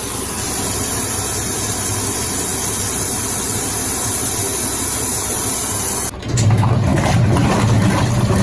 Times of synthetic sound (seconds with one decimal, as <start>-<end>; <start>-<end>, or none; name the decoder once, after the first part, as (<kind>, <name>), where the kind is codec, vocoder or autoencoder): none